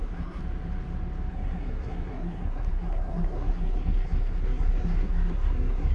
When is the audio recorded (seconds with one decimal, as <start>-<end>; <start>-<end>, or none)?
0.4-1.3